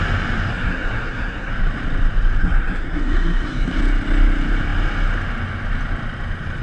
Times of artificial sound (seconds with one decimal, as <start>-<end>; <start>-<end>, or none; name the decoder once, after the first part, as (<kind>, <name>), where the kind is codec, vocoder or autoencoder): 0.5-1.5 (codec, SNAC); 2.4-3.8